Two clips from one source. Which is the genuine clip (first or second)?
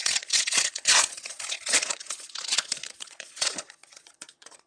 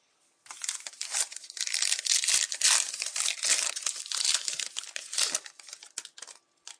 second